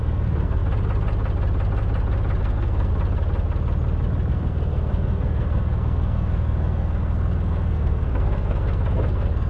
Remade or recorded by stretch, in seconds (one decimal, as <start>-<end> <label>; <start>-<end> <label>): 0.0-0.6 remade; 0.6-2.4 recorded; 2.4-2.9 remade; 2.9-4.3 recorded; 4.3-9.5 remade